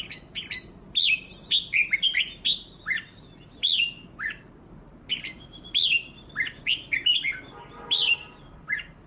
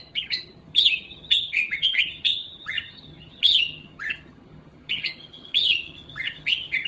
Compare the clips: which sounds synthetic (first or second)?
second